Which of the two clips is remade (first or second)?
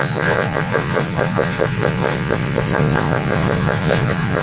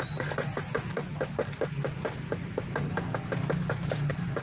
first